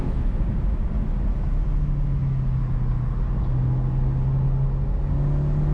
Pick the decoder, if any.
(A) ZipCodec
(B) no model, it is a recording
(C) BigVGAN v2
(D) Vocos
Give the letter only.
B